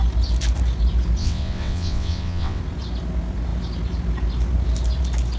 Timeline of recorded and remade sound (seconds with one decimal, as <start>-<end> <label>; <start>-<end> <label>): 0.0-1.2 recorded; 1.2-2.6 remade; 2.6-5.4 recorded